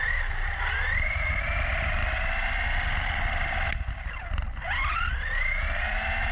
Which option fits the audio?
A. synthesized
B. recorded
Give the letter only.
B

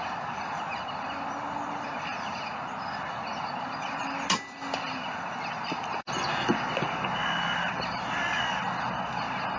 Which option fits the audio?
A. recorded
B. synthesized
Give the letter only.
A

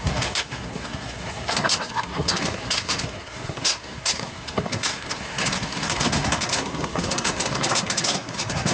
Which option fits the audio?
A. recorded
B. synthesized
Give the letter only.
B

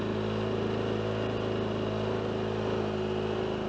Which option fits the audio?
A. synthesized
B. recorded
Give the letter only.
B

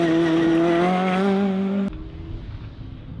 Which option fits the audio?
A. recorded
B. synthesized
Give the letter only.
A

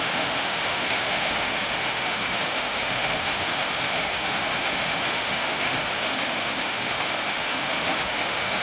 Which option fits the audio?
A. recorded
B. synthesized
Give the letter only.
B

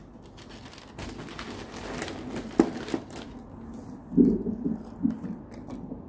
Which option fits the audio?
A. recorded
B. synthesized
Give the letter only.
A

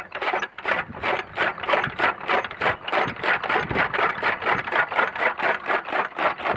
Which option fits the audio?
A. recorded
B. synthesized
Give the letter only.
B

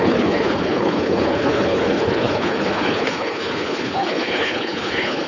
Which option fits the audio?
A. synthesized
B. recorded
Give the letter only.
A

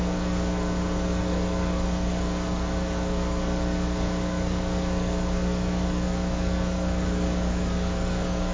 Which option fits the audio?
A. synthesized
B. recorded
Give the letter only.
A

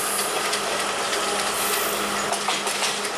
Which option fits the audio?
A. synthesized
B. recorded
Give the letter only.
B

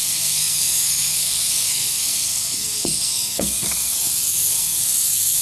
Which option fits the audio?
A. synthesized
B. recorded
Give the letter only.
A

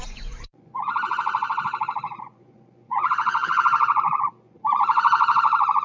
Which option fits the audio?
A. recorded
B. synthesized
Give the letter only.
B